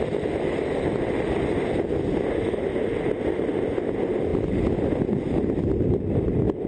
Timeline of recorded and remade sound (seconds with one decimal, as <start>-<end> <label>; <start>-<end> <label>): 0.0-6.7 recorded